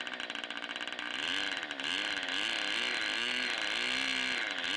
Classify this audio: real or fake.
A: real